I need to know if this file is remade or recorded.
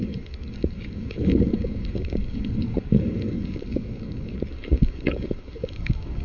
remade